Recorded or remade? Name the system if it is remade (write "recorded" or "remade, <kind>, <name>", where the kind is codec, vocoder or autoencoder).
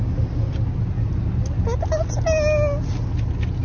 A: recorded